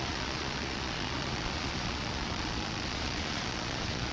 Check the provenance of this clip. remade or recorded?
remade